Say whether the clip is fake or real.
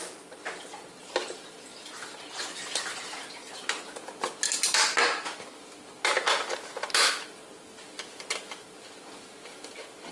real